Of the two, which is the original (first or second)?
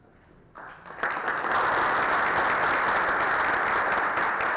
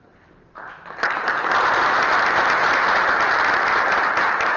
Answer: first